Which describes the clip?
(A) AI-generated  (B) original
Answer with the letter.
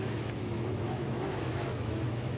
A